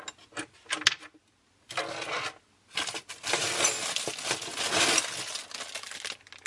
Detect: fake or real real